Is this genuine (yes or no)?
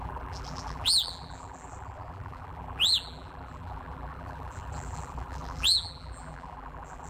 no